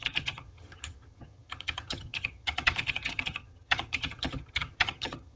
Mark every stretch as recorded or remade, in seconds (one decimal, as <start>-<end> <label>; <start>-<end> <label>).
0.0-5.4 remade